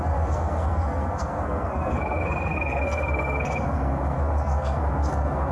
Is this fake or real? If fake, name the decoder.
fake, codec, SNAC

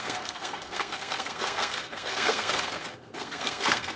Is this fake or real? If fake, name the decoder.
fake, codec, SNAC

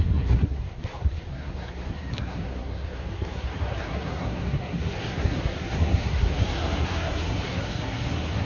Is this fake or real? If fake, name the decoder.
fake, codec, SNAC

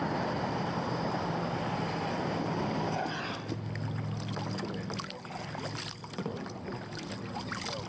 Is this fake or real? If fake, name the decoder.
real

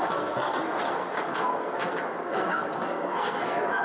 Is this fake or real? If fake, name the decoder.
fake, codec, SNAC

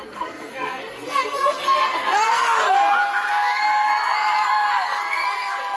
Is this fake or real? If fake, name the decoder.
fake, codec, SNAC